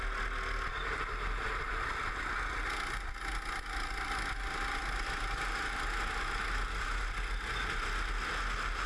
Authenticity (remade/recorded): recorded